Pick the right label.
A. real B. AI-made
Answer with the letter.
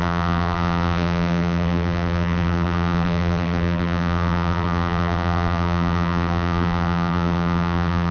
B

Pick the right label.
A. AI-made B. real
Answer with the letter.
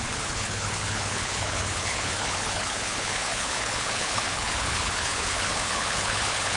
A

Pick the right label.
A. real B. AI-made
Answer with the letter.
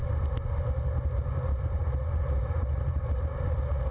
A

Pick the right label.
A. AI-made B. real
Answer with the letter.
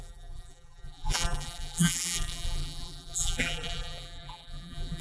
A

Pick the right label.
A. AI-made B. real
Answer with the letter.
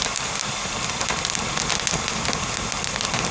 B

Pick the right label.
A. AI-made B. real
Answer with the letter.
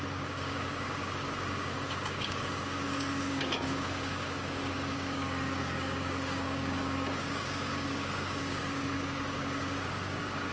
A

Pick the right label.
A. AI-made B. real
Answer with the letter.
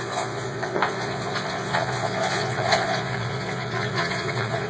A